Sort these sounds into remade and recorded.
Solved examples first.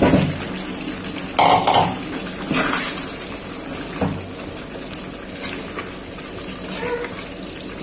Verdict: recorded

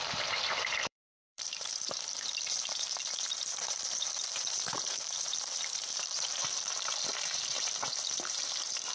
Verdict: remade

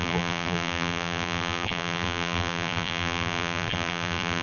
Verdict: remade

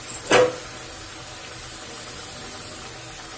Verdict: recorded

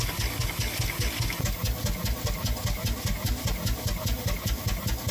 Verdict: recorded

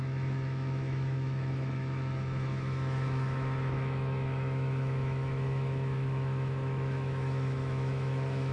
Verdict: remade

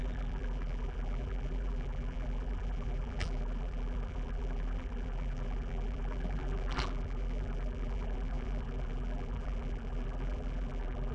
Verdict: remade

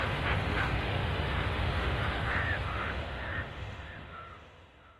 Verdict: remade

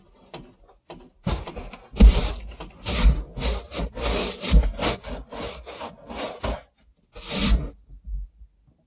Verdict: recorded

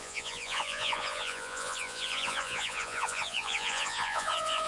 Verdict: remade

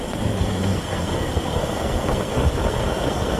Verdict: remade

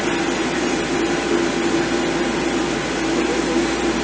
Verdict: recorded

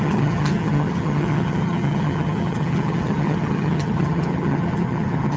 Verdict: remade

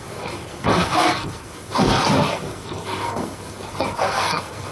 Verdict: remade